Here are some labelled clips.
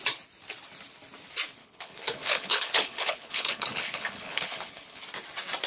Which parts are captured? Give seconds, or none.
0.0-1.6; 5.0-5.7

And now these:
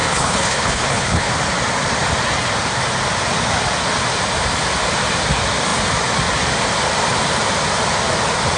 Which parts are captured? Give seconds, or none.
1.3-8.6

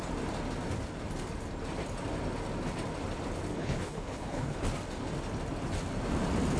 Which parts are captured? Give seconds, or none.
0.0-3.5; 4.6-6.6

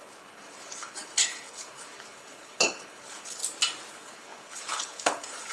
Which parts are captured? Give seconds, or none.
3.4-3.9

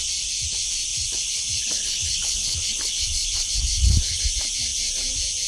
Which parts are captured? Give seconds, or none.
0.0-0.9; 4.2-5.5